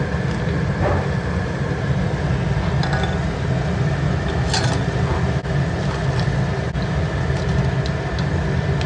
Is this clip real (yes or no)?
yes